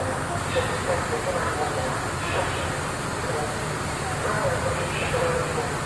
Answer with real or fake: real